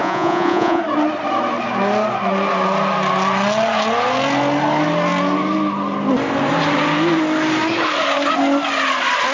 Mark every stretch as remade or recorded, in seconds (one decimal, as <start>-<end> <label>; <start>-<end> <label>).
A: 0.0-0.8 remade; 0.8-9.3 recorded